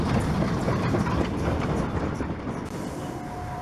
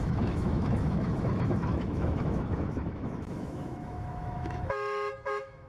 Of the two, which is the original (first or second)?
first